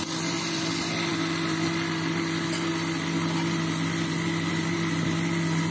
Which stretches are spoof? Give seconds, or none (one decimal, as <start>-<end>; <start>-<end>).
none